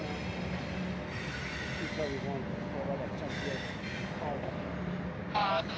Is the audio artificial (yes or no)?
no